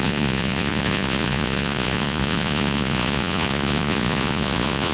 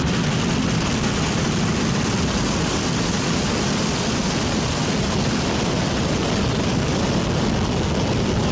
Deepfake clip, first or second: first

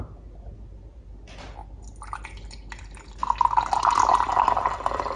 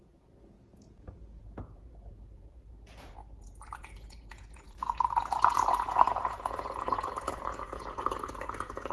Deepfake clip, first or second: second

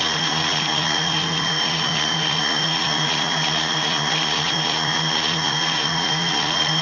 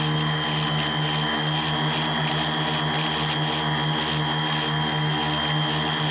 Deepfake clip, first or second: first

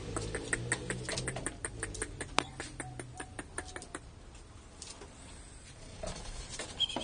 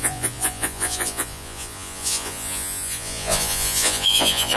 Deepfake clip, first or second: second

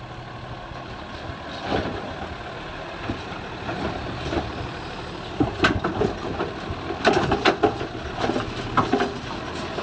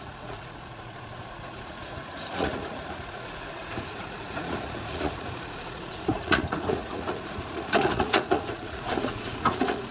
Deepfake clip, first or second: second